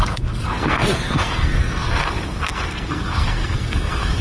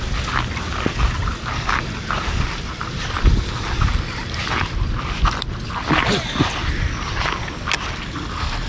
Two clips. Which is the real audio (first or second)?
second